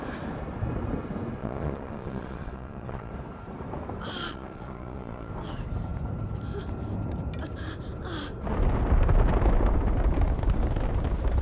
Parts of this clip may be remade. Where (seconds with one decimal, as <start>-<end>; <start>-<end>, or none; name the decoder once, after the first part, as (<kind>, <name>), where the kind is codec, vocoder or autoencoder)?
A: 1.4-3.1 (vocoder, Vocos); 4.2-5.3